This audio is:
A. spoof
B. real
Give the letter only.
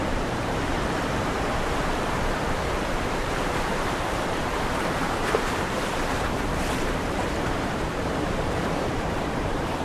A